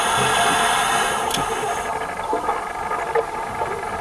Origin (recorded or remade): recorded